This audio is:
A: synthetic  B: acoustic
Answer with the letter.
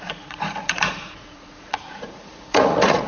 A